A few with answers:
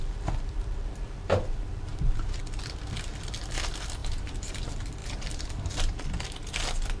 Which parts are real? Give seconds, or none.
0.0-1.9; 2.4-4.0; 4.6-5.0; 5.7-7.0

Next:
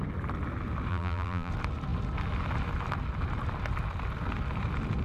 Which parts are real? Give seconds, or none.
0.0-0.9; 1.5-5.0